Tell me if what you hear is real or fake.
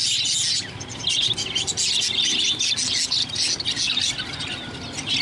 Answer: real